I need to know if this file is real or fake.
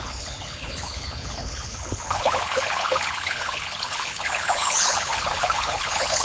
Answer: fake